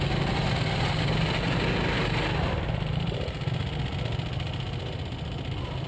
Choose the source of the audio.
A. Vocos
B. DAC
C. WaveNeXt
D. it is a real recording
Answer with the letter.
D